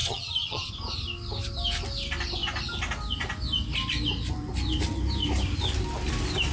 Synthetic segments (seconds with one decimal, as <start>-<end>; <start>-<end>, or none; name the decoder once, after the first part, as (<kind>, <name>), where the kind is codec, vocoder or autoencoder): 0.0-0.7 (vocoder, HiFi-GAN)

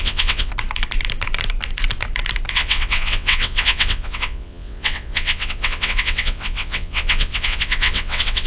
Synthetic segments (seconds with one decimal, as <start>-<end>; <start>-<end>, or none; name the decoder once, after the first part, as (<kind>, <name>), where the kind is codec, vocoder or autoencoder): 0.0-0.5 (vocoder, WaveNeXt); 2.5-8.5

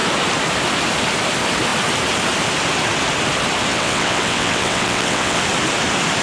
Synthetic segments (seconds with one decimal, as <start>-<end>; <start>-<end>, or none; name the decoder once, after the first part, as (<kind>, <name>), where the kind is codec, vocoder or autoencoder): 3.7-5.4 (vocoder, WaveNeXt)

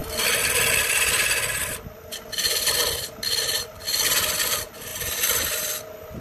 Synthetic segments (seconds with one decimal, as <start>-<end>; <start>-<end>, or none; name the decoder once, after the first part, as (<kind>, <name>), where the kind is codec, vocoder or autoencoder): none

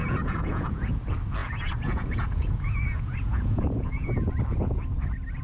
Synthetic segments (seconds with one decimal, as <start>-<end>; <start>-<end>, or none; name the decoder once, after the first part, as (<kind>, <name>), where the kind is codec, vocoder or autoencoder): 0.0-0.9 (vocoder, Vocos); 1.4-4.3